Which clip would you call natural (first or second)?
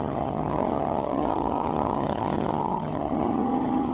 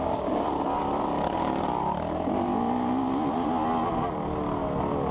second